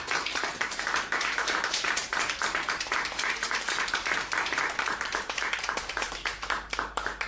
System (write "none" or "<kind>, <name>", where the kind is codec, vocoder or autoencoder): vocoder, BigVGAN v2